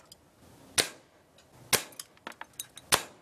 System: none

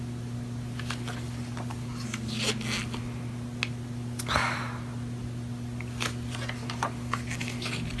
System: none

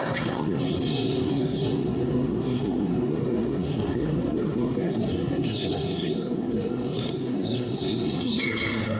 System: codec, SNAC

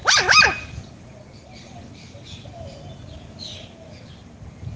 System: none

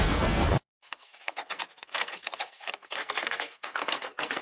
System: codec, SNAC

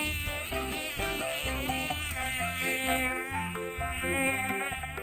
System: codec, SNAC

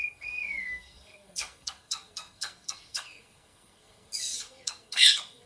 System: codec, SNAC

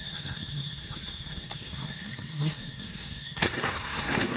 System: codec, SNAC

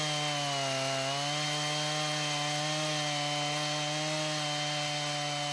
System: none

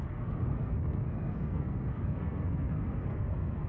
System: codec, SNAC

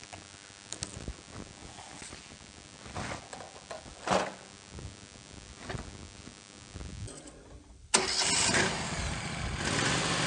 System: none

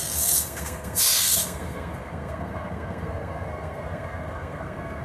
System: codec, SNAC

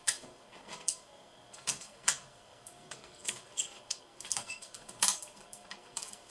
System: codec, SNAC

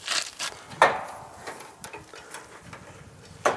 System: none